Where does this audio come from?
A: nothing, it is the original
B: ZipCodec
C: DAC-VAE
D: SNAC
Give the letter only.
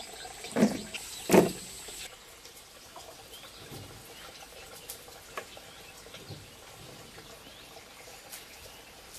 A